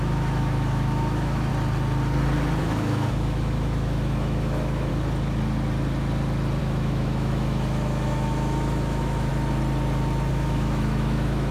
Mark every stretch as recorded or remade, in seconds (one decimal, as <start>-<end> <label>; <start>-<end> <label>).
0.0-1.5 remade; 1.5-2.6 recorded; 2.6-4.9 remade; 4.9-6.6 recorded; 6.6-9.3 remade; 9.3-10.3 recorded; 10.3-11.5 remade